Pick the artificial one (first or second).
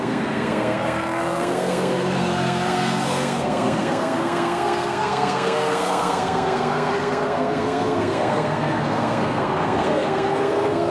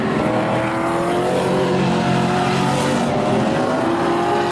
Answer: first